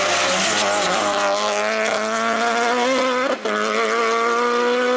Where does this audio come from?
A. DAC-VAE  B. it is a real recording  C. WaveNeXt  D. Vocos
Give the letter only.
B